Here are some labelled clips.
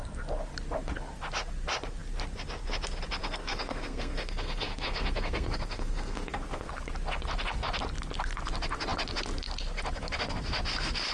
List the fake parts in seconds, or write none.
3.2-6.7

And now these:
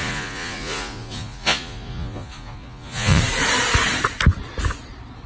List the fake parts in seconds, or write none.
0.0-3.2

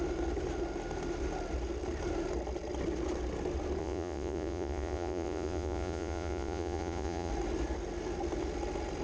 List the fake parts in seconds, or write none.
3.8-7.3

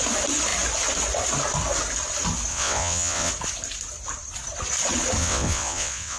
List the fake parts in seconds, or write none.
2.5-3.3; 5.2-6.2

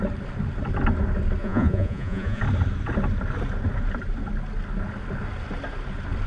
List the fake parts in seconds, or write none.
1.4-2.4